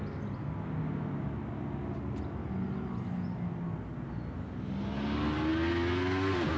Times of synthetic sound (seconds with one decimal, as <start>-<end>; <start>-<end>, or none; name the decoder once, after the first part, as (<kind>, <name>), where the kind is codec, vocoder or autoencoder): none